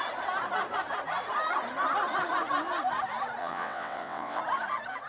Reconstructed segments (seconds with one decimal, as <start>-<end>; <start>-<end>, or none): 3.4-4.4